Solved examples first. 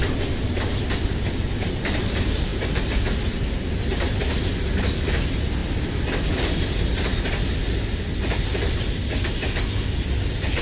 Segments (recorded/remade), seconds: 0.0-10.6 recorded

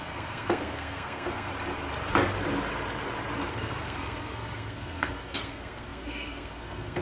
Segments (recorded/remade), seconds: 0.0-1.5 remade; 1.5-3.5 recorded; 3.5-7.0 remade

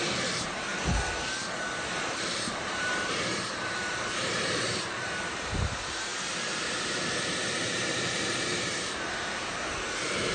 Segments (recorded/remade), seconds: 0.0-0.7 remade; 0.7-2.2 recorded; 2.2-6.1 remade; 6.1-6.6 recorded; 6.6-10.3 remade